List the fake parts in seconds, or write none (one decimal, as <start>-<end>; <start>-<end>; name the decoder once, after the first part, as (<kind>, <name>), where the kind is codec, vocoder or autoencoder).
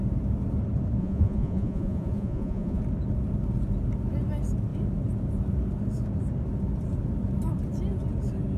1.0-2.8 (vocoder, Vocos)